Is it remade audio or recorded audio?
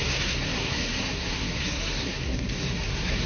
remade